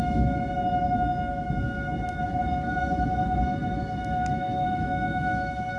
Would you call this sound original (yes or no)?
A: no